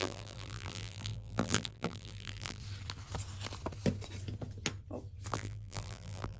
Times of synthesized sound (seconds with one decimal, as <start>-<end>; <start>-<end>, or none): 0.0-2.6; 5.3-6.4